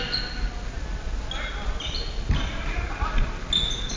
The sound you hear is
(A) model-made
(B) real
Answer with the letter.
B